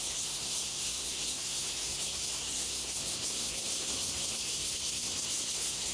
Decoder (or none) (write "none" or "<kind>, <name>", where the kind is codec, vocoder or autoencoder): codec, SNAC